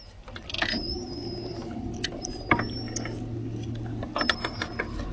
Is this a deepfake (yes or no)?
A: no